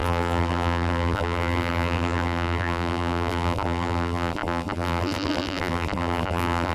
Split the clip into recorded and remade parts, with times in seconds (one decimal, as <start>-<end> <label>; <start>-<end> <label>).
0.0-6.7 remade

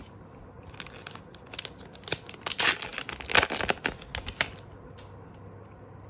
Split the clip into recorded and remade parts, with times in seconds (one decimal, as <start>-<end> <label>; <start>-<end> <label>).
0.0-2.9 recorded; 2.9-3.4 remade; 3.4-6.1 recorded

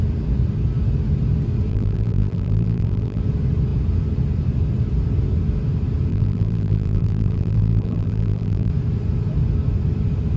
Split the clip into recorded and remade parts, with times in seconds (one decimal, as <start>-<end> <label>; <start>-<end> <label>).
0.0-1.7 recorded; 1.7-3.2 remade; 3.2-6.1 recorded; 6.1-8.7 remade; 8.7-10.4 recorded

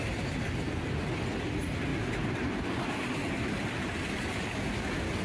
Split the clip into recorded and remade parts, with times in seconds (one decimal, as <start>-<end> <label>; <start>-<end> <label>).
0.0-5.2 recorded

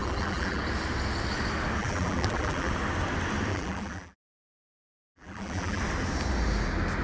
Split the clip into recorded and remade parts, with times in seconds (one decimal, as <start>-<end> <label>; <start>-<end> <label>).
0.0-0.6 remade; 0.6-1.8 recorded; 1.8-2.7 remade; 2.7-3.5 recorded; 3.5-5.8 remade; 5.8-7.0 recorded

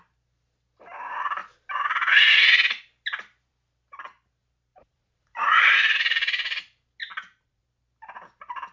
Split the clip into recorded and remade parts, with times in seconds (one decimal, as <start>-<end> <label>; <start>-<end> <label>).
0.0-4.7 recorded; 4.7-6.6 remade; 6.6-7.0 recorded; 7.0-7.6 remade; 7.6-8.7 recorded

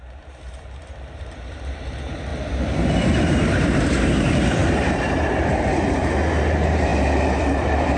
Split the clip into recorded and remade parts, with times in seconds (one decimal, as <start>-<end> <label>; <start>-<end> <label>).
0.0-2.3 remade; 2.3-3.5 recorded; 3.5-8.0 remade